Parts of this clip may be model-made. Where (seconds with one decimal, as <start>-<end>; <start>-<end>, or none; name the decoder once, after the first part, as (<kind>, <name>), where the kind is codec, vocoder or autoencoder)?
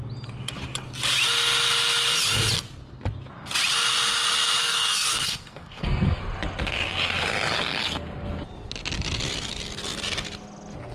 4.6-6.2 (codec, SNAC)